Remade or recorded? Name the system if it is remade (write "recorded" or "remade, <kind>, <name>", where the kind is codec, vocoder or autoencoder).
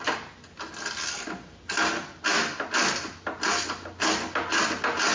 recorded